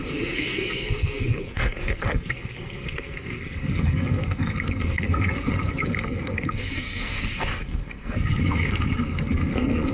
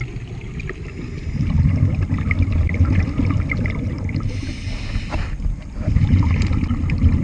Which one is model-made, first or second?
first